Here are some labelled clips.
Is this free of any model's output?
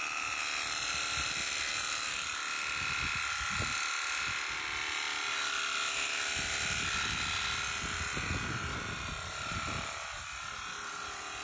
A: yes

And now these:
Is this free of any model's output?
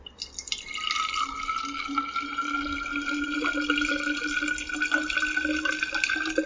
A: yes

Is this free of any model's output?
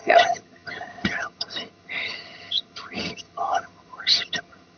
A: no